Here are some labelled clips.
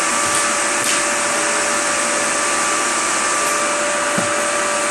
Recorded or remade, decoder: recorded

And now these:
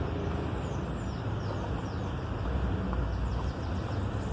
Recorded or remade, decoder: recorded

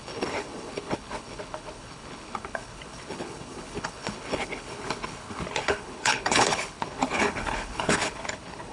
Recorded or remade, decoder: remade, codec, HILCodec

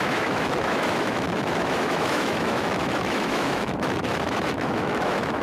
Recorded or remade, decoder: remade, autoencoder, DAC-VAE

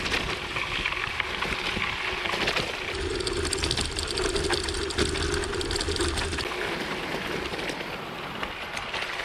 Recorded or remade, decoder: recorded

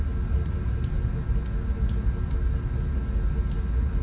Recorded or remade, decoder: recorded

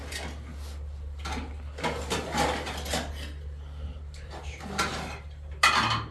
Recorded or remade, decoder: recorded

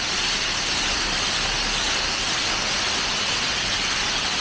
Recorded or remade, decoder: recorded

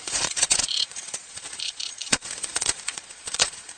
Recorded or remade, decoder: remade, vocoder, Vocos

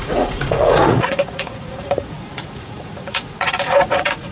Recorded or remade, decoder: remade, vocoder, Vocos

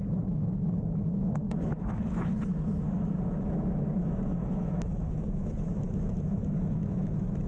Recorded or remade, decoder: remade, autoencoder, DAC-VAE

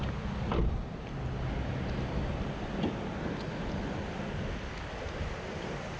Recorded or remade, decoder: recorded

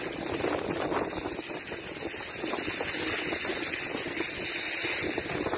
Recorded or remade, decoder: recorded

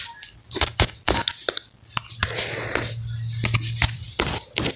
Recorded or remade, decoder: recorded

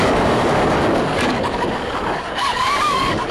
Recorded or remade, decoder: remade, codec, DAC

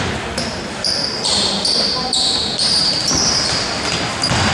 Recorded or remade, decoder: remade, vocoder, BigVGAN v2